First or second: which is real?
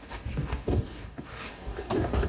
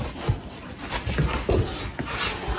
second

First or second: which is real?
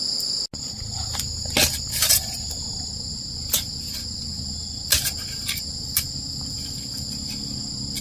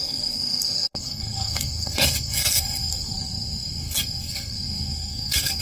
first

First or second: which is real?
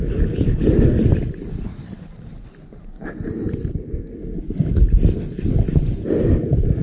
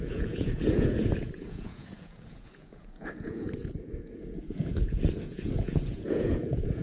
first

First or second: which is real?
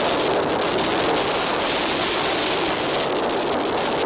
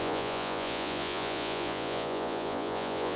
first